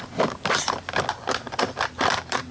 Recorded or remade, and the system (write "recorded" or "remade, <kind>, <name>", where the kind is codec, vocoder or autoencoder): remade, vocoder, BigVGAN v2